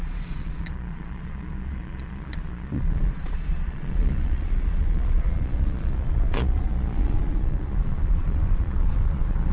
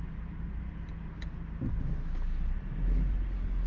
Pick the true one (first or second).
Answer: second